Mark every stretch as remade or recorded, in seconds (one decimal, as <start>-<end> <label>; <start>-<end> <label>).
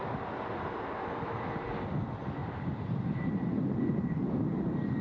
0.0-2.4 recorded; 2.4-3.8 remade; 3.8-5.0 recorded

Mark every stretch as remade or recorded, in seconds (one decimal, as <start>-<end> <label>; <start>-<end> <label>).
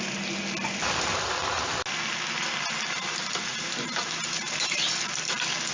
0.0-3.5 recorded; 3.5-4.9 remade; 4.9-5.7 recorded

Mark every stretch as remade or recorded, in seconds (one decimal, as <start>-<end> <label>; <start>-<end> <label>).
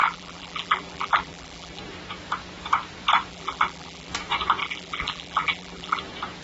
0.0-1.8 remade; 1.8-3.3 recorded; 3.3-4.1 remade; 4.1-4.6 recorded; 4.6-6.0 remade; 6.0-6.4 recorded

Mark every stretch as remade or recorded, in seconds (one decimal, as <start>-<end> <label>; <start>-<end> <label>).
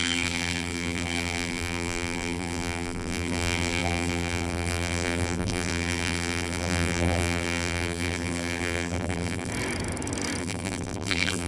0.0-9.5 remade; 9.5-10.4 recorded; 10.4-11.5 remade